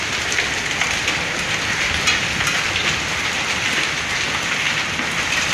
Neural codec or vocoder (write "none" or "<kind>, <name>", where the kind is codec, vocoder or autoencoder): none